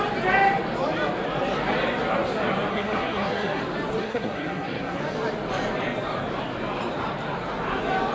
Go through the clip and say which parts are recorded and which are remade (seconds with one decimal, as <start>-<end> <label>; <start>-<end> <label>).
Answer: 0.0-2.7 recorded; 2.7-3.6 remade; 3.6-4.0 recorded; 4.0-5.0 remade; 5.0-8.1 recorded